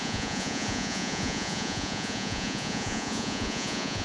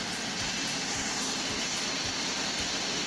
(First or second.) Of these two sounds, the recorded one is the second